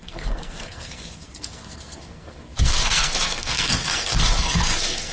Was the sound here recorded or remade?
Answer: remade